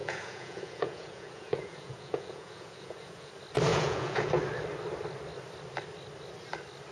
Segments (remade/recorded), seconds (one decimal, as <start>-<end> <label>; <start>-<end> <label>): 0.0-3.3 remade; 3.3-3.7 recorded; 3.7-4.3 remade; 4.3-6.9 recorded

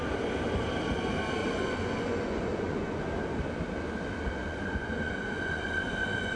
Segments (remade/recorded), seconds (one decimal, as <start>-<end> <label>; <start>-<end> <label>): 0.0-1.4 recorded; 1.4-3.0 remade; 3.0-4.4 recorded; 4.4-6.4 remade

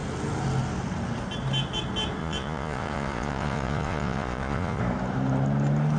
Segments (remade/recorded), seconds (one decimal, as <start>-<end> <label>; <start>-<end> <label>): 0.0-2.2 recorded; 2.2-4.8 remade; 4.8-6.0 recorded

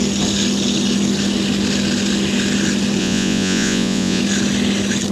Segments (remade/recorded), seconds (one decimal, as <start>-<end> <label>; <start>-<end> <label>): 0.0-3.0 recorded; 3.0-4.2 remade; 4.2-5.1 recorded

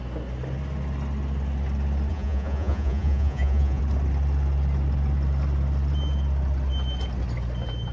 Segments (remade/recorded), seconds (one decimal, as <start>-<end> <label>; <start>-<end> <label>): 0.0-2.1 recorded; 2.1-3.8 remade; 3.8-7.9 recorded

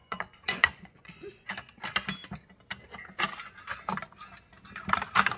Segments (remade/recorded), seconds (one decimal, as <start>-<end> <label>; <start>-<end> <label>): 0.0-1.5 remade; 1.5-5.4 recorded

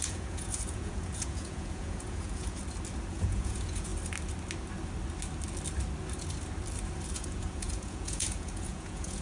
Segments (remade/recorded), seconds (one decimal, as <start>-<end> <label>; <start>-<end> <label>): 0.0-2.6 remade; 2.6-3.1 recorded; 3.1-3.9 remade; 3.9-7.1 recorded; 7.1-9.2 remade

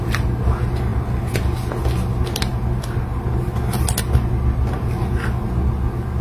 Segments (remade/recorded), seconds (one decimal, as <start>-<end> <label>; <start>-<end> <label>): 0.0-6.2 recorded